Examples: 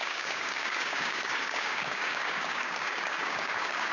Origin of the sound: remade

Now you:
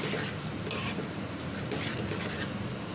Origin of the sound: recorded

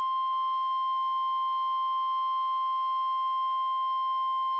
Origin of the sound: recorded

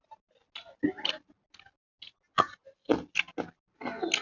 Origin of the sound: recorded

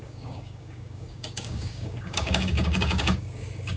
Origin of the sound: remade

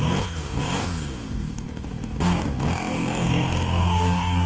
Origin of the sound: remade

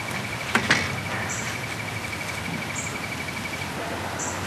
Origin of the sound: recorded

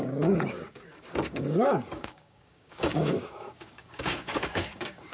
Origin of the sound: remade